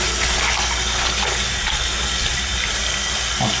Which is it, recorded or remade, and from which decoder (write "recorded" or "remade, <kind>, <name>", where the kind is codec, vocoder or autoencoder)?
recorded